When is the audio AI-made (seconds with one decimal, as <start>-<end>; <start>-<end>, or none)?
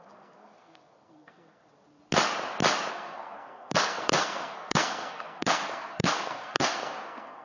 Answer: 0.0-1.6; 2.9-7.4